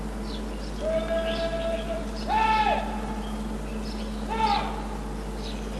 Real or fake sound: real